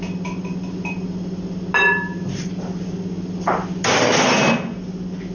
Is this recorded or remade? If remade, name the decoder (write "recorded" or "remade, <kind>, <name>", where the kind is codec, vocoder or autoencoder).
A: recorded